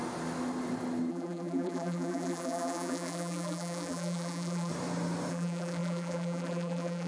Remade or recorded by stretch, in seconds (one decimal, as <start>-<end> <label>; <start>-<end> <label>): 0.0-1.1 recorded; 1.1-4.7 remade; 4.7-5.3 recorded; 5.3-7.1 remade